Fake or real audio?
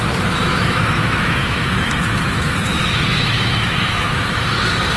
fake